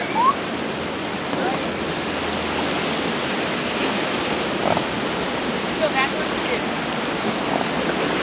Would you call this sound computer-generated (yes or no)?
no